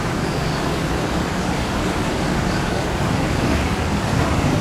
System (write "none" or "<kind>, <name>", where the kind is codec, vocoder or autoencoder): codec, DAC